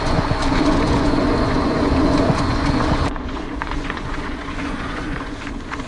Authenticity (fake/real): fake